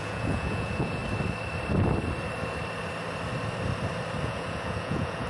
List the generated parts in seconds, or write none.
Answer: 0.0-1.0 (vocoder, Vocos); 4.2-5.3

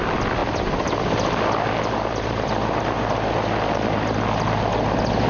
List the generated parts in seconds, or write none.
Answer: none

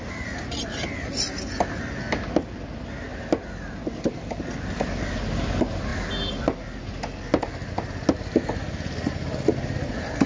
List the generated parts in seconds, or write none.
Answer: none

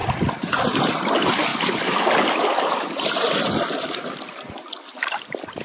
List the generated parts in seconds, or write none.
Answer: 0.0-0.9 (vocoder, BigVGAN v2); 1.5-4.9

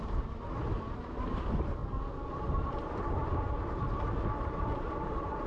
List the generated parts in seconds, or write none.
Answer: 0.0-1.8 (vocoder, BigVGAN v2); 2.3-3.2; 4.6-5.5

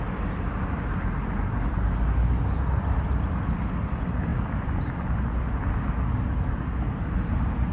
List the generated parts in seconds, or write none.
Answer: 4.3-5.6 (vocoder, BigVGAN v2)

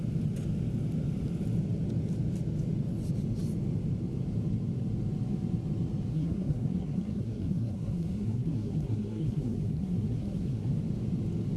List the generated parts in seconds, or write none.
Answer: 6.1-10.7 (codec, SNAC)